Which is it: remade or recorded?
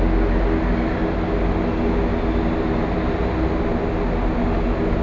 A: recorded